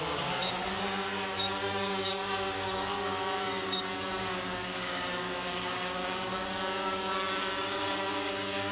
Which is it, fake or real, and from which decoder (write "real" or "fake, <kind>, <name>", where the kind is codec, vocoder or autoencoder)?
fake, codec, DAC